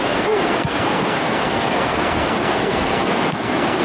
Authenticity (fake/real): fake